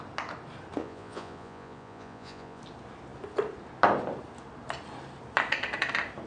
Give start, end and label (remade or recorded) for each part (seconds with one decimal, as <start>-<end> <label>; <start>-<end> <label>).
0.0-0.8 recorded; 0.8-2.6 remade; 2.6-6.3 recorded